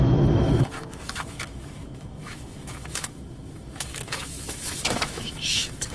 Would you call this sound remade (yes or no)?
yes